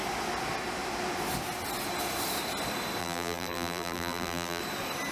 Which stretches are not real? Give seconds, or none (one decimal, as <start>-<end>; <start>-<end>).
3.0-4.6